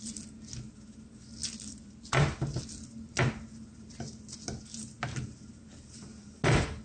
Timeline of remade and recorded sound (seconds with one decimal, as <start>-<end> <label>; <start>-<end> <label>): 0.0-6.8 recorded